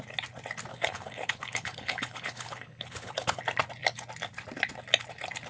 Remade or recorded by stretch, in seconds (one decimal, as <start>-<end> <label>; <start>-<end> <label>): 0.0-0.7 recorded; 0.7-3.4 remade; 3.4-5.5 recorded